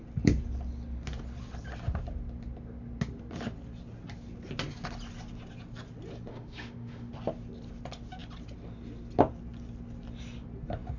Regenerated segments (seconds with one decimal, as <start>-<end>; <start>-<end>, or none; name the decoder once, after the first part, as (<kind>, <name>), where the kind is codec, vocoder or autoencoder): 6.3-7.1 (autoencoder, DAC-VAE)

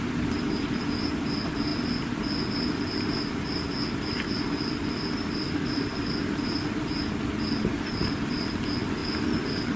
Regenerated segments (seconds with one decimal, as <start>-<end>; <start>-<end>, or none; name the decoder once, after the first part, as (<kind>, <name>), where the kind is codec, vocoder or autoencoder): none

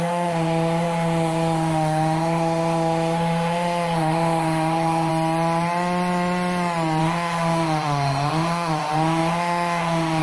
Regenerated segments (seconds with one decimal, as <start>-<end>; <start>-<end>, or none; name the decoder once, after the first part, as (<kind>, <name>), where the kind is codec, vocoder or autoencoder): 0.0-5.1 (autoencoder, DAC-VAE); 7.0-10.2

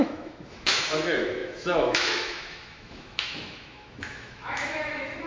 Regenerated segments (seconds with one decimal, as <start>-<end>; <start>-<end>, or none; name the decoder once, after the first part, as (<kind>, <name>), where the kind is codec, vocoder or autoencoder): 0.0-5.3 (autoencoder, DAC-VAE)

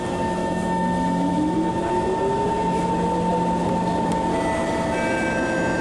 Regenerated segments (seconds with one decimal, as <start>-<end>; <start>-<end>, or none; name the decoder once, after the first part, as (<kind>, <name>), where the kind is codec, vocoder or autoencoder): 0.4-1.7 (autoencoder, DAC-VAE)

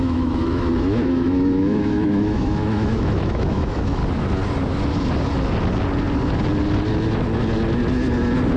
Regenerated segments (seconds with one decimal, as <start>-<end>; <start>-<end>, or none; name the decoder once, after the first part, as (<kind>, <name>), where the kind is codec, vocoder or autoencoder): 0.0-4.0 (autoencoder, DAC-VAE)

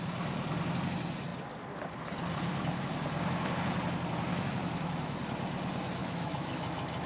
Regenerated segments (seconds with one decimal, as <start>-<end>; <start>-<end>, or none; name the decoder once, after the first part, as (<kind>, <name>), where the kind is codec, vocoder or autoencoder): 4.3-5.2 (autoencoder, DAC-VAE); 6.0-7.1